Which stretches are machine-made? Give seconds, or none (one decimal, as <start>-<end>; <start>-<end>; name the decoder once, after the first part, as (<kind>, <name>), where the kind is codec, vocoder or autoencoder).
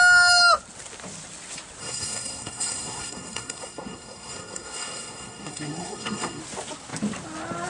1.8-6.4 (codec, SNAC)